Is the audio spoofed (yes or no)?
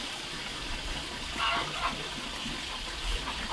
no